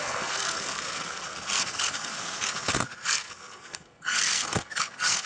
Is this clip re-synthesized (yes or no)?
yes